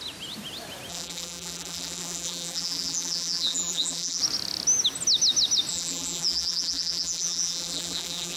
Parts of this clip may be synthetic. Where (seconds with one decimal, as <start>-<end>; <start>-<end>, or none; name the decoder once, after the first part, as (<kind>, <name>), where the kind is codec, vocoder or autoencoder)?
0.9-4.2 (vocoder, BigVGAN v2); 5.7-8.4